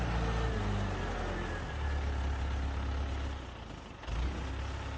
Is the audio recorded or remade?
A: recorded